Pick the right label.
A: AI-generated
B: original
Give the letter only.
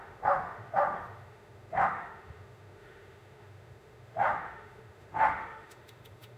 A